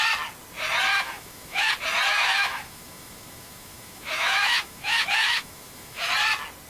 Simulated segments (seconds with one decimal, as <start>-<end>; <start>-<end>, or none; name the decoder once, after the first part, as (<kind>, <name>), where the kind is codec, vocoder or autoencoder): 0.9-1.7 (autoencoder, DAC-VAE); 2.1-6.1